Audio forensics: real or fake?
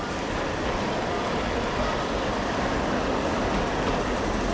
real